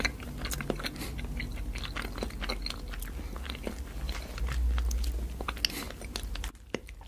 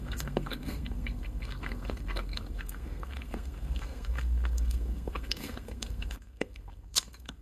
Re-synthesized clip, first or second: second